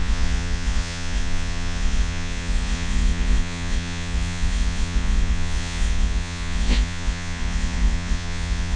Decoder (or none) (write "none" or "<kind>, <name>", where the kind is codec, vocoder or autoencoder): vocoder, Vocos